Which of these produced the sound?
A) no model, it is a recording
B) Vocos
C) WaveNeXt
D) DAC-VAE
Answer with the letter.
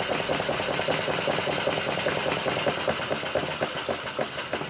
A